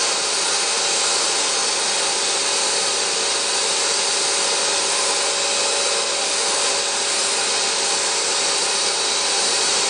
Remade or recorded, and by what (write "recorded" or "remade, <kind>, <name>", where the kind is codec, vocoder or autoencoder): recorded